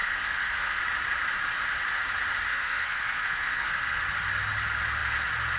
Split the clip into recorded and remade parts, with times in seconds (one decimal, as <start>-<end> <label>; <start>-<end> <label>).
0.0-0.8 remade; 0.8-2.5 recorded; 2.5-4.0 remade; 4.0-5.6 recorded